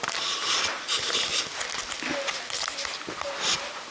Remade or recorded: recorded